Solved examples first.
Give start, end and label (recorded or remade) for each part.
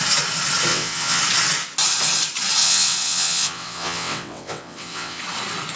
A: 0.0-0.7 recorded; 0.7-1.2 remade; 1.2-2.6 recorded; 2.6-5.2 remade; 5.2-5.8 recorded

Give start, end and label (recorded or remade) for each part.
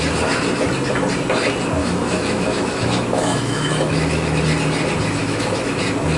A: 0.0-1.8 recorded; 1.8-4.4 remade; 4.4-5.2 recorded; 5.2-5.8 remade; 5.8-6.2 recorded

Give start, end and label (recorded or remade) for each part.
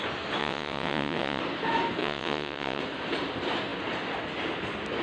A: 0.0-0.4 recorded; 0.4-1.4 remade; 1.4-2.0 recorded; 2.0-2.8 remade; 2.8-5.0 recorded